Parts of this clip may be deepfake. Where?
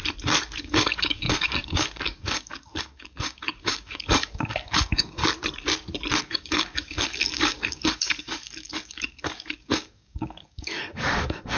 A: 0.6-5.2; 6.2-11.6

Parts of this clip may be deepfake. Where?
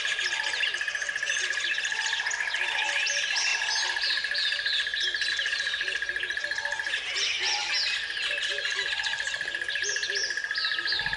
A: none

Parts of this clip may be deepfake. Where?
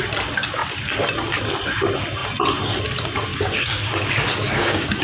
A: 3.3-5.0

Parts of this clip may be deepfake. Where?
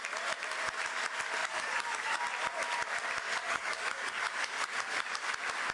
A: 1.4-2.2; 3.3-5.2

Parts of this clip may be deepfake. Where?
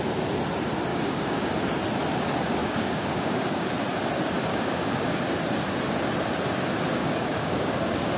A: 0.9-1.5; 2.6-3.7; 4.5-5.2; 7.0-8.2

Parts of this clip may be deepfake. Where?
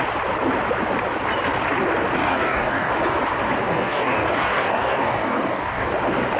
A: 2.2-2.9; 3.7-5.9